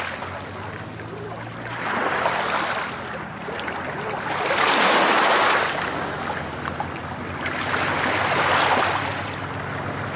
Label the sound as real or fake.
real